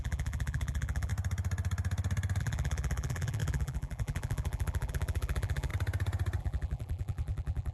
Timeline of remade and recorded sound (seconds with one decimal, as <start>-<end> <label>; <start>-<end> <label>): 0.0-1.1 remade; 1.1-2.4 recorded; 2.4-5.7 remade; 5.7-6.4 recorded; 6.4-7.7 remade

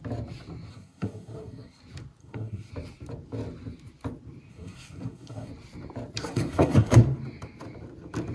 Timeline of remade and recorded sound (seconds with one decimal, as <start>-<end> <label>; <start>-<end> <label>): 0.0-0.7 recorded; 0.7-1.8 remade; 1.8-2.2 recorded; 2.2-2.7 remade; 2.7-4.5 recorded; 4.5-5.5 remade; 5.5-6.2 recorded; 6.2-7.0 remade; 7.0-8.3 recorded

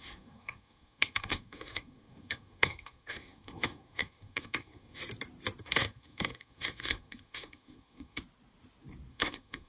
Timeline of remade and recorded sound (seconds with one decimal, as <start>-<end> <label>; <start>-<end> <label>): 0.0-5.0 remade; 5.0-5.6 recorded; 5.6-8.2 remade; 8.2-9.1 recorded; 9.1-9.7 remade

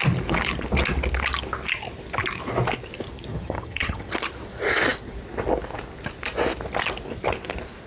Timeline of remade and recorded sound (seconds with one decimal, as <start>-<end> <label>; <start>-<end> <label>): 0.0-3.3 recorded; 3.3-4.1 remade; 4.1-7.9 recorded

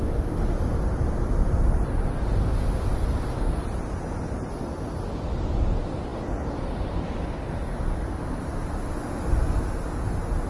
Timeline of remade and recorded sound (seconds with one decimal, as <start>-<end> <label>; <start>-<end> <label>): 0.0-10.5 recorded